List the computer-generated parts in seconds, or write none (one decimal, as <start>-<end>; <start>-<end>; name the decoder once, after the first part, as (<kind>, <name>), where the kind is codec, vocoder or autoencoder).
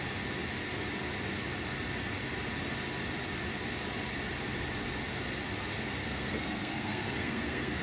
6.0-7.8 (codec, SNAC)